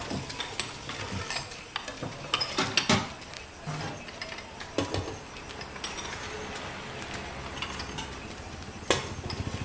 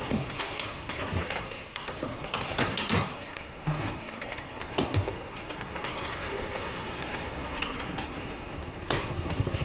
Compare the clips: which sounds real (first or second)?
first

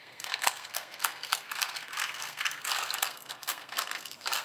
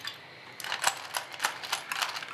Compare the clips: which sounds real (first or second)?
second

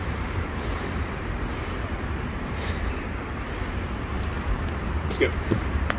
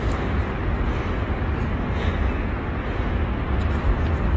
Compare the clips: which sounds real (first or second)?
second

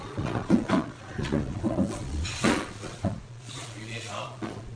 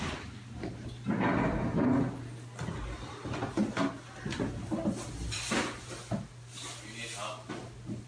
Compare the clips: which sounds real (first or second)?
second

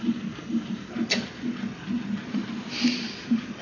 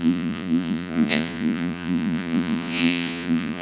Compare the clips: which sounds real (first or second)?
first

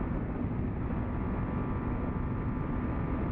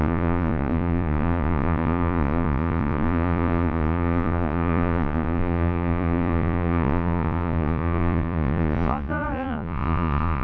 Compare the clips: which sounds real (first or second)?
first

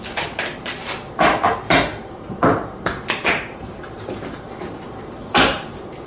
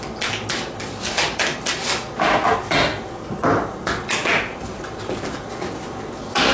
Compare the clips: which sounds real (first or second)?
second